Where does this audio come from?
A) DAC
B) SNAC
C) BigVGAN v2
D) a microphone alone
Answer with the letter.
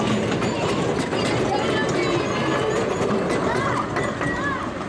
D